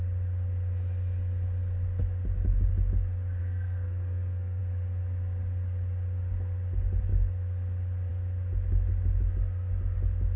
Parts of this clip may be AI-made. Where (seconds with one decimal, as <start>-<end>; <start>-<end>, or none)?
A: 3.4-4.6